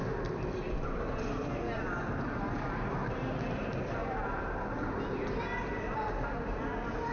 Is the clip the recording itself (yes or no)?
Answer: yes